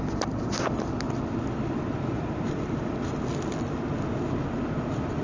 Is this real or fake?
real